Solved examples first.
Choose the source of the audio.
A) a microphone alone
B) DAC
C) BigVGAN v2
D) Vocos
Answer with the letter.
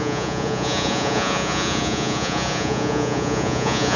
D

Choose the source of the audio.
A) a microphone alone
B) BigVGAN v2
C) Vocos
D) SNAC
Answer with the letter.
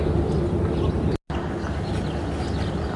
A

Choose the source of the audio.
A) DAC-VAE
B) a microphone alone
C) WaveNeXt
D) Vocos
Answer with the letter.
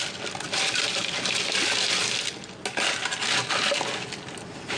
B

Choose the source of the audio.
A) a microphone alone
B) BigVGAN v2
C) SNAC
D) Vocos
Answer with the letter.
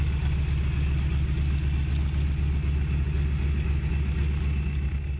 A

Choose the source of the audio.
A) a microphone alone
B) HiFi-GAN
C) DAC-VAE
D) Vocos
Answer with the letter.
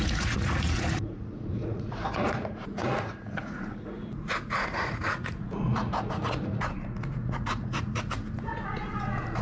D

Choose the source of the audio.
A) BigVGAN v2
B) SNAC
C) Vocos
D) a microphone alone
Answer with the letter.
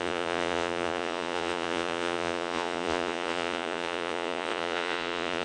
C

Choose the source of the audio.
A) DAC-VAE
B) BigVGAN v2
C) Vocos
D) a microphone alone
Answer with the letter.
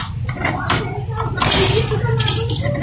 D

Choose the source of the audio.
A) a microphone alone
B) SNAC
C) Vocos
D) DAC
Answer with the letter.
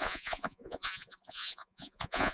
C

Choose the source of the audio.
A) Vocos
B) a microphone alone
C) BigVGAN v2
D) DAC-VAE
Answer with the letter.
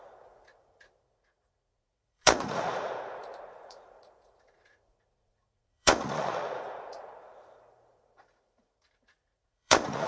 A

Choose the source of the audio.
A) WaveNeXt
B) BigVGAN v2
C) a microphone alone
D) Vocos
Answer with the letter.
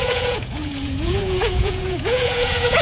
D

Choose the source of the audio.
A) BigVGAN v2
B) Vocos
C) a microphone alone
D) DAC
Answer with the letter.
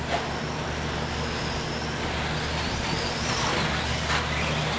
C